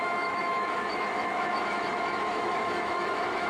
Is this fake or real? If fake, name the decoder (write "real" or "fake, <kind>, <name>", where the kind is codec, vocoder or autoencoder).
fake, autoencoder, DAC-VAE